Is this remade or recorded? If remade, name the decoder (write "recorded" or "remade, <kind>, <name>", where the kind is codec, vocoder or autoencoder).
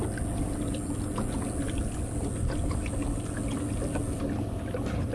recorded